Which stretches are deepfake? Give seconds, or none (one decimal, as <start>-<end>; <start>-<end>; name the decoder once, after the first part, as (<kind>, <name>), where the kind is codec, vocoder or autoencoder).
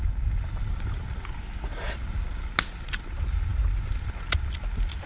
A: none